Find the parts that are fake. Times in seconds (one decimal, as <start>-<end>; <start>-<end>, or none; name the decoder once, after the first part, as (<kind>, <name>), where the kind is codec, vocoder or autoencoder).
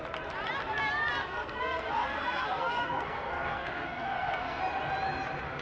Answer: 1.2-4.6 (codec, SNAC)